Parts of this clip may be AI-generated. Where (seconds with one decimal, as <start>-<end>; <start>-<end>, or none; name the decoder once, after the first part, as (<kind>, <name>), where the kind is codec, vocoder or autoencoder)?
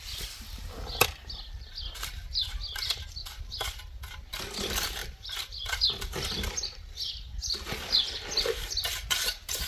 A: 5.0-6.4 (vocoder, BigVGAN v2)